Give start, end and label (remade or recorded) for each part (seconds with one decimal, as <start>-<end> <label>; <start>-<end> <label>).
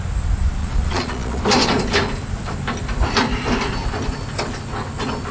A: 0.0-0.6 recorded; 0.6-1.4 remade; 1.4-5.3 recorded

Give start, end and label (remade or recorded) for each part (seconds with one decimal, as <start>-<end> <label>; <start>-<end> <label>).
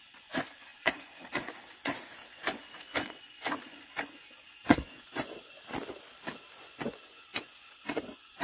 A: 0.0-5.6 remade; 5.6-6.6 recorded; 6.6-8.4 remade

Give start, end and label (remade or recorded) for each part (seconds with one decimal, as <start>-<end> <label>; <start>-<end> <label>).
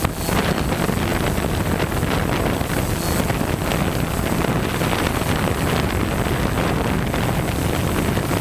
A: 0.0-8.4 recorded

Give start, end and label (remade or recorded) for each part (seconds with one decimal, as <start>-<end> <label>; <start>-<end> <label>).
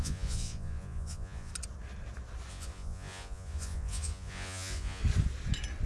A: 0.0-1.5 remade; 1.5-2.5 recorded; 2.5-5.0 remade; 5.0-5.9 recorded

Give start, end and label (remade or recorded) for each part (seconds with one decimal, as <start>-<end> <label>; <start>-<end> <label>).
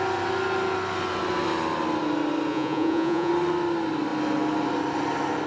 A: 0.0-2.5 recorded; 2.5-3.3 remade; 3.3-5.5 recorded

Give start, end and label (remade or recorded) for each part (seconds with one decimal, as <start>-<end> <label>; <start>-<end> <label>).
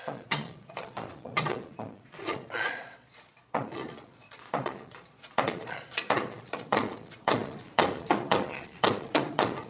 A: 0.0-9.7 remade